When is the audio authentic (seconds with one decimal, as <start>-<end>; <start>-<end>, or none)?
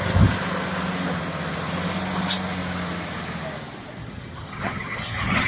0.0-4.0